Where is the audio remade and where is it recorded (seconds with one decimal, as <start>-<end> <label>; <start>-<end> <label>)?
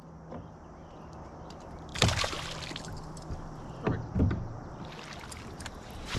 0.0-6.2 recorded